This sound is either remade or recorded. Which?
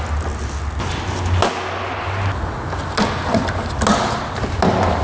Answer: recorded